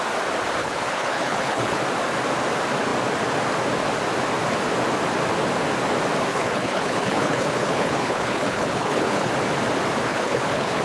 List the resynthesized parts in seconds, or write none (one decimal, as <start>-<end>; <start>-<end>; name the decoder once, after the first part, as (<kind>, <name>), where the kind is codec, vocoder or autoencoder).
0.6-1.8 (codec, HILCodec); 6.3-9.3; 10.1-10.8